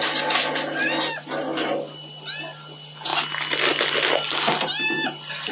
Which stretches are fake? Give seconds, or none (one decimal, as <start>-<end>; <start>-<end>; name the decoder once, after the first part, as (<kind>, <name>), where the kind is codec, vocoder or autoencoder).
none